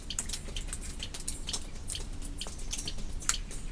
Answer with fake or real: real